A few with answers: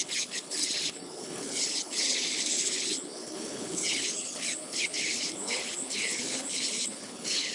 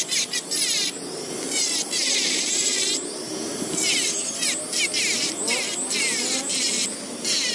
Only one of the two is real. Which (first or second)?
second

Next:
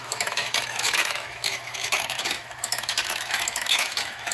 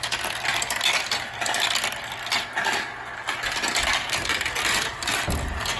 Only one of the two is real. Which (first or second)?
second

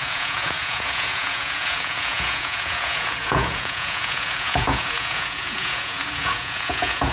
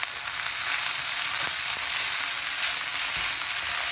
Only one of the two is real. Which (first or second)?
second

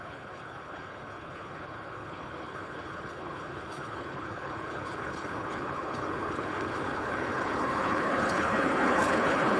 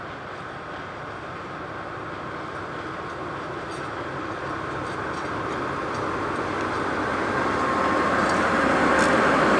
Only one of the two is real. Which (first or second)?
second